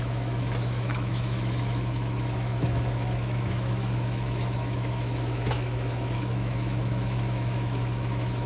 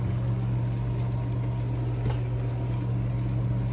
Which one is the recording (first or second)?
second